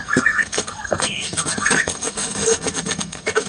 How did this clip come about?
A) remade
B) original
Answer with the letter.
A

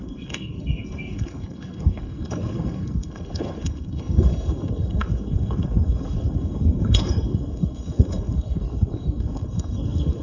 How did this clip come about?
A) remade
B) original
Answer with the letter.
A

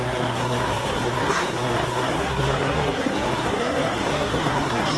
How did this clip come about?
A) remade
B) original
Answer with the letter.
A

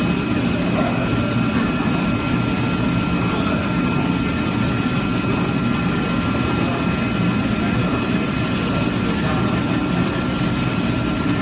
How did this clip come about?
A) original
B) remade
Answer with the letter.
A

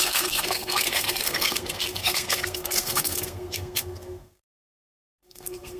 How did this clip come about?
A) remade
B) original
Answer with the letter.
A